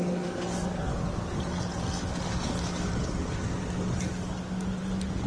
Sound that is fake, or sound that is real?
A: real